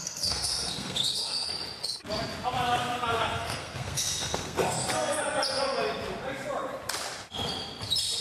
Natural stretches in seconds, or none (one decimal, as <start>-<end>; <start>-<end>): 1.5-2.8; 5.2-8.2